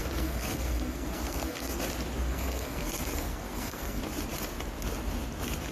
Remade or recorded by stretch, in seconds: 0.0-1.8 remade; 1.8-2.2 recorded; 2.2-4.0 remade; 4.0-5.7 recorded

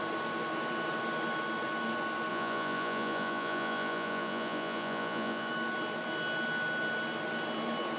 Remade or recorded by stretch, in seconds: 0.0-2.3 recorded; 2.3-5.5 remade; 5.5-8.0 recorded

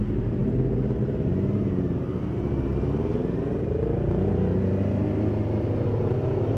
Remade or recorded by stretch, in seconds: 0.0-6.6 recorded

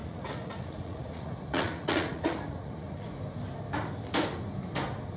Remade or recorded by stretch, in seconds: 0.0-3.0 remade; 3.0-5.2 recorded

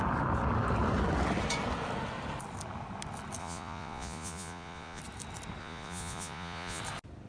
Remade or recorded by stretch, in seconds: 0.0-3.4 recorded; 3.4-5.0 remade; 5.0-5.6 recorded; 5.6-6.8 remade; 6.8-7.3 recorded

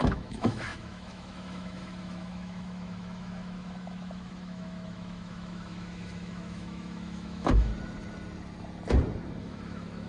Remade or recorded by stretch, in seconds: 0.0-7.7 remade; 7.7-9.4 recorded; 9.4-10.1 remade

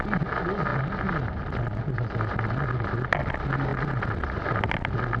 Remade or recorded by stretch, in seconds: 0.0-3.7 recorded; 3.7-4.7 remade; 4.7-5.2 recorded